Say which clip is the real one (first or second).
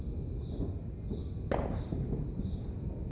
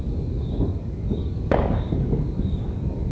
first